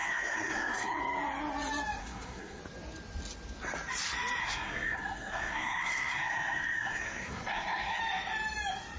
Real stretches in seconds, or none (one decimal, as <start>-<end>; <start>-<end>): 1.0-2.0; 2.6-4.4; 8.0-9.0